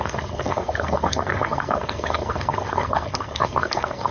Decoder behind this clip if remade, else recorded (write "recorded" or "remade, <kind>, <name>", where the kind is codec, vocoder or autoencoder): remade, codec, SNAC